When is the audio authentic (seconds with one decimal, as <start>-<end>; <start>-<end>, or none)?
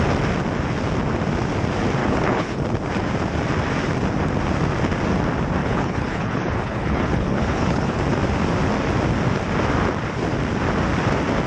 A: 0.0-2.0; 2.6-5.6; 8.0-11.5